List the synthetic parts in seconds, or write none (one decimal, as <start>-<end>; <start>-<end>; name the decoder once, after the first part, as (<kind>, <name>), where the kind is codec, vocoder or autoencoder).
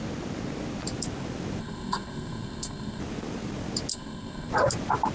1.6-3.0 (codec, SNAC); 3.9-4.5